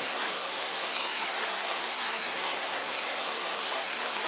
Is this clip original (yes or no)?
no